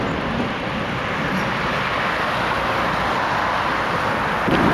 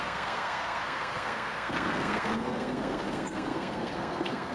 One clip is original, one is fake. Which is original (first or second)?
first